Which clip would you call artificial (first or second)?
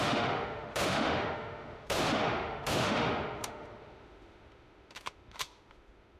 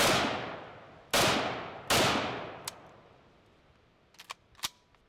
first